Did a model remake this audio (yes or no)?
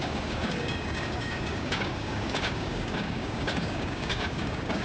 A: yes